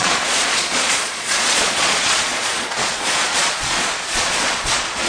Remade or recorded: remade